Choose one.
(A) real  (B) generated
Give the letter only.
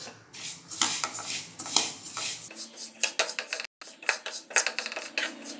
A